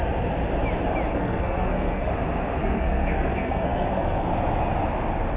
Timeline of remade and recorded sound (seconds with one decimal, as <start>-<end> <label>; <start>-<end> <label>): 0.0-1.1 recorded; 1.1-2.1 remade; 2.1-2.6 recorded; 2.6-4.2 remade; 4.2-5.4 recorded